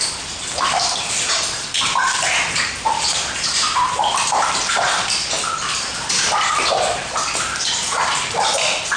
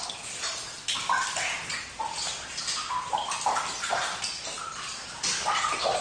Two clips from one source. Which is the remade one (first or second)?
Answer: first